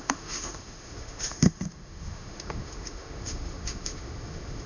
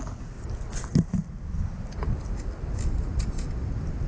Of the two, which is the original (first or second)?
second